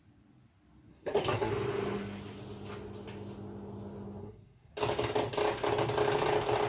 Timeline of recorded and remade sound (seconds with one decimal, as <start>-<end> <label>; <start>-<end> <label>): 0.0-0.9 recorded; 0.9-1.5 remade; 1.5-4.2 recorded; 4.2-4.7 remade; 4.7-6.7 recorded